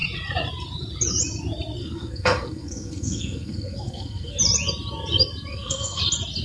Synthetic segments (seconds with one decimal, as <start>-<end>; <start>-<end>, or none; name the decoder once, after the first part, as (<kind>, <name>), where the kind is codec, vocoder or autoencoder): 1.8-4.4 (codec, SNAC); 5.5-6.0